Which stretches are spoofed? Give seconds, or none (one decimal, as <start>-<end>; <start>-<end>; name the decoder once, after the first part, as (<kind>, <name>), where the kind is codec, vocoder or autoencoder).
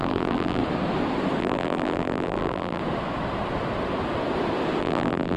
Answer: 0.0-0.6 (vocoder, BigVGAN v2); 1.4-2.8; 4.8-5.4